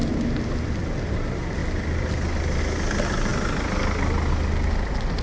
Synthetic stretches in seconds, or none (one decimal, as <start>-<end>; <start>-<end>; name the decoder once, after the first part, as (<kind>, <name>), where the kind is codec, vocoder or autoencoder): none